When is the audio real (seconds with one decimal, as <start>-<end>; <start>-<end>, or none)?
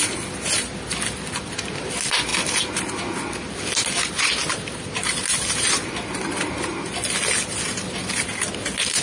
0.0-4.4; 6.8-9.0